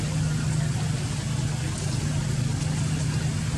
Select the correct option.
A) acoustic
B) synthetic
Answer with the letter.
A